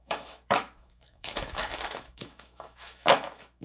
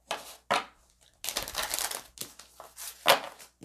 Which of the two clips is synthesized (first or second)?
first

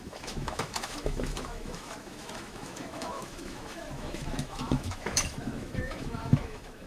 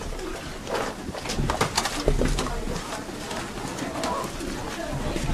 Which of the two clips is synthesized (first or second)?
first